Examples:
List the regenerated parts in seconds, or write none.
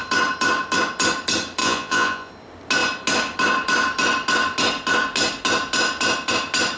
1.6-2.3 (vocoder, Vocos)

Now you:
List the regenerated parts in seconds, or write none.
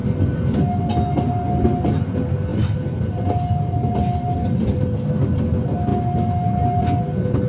none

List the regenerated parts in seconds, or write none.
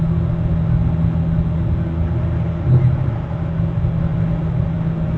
none